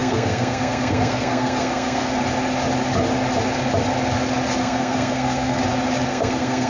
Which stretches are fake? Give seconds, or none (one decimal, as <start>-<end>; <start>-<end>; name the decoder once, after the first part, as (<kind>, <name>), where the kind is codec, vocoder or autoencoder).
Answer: 0.0-2.2 (codec, SNAC); 4.6-5.6; 6.1-6.7